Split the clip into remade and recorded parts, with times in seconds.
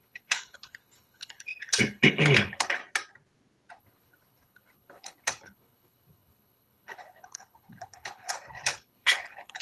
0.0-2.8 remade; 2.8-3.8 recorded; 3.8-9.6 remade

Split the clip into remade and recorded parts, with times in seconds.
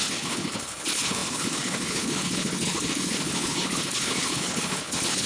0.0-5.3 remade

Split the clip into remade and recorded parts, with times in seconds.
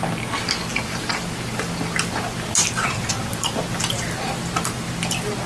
0.0-5.5 recorded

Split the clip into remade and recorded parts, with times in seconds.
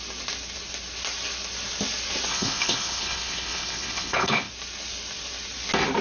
0.0-2.3 recorded; 2.3-4.5 remade; 4.5-6.0 recorded